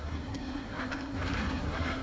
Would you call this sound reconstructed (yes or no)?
yes